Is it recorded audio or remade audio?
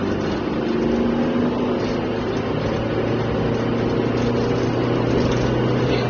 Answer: recorded